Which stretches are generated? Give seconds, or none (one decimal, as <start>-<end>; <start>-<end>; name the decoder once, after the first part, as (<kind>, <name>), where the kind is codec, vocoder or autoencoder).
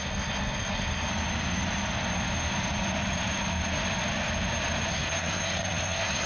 0.0-1.1 (codec, SNAC); 4.9-6.3